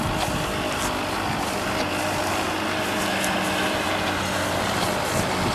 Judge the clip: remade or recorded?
recorded